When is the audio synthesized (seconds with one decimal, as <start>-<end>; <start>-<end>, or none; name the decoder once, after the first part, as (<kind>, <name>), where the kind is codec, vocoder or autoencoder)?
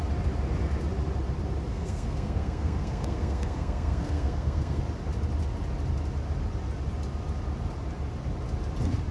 1.7-4.8 (codec, SNAC)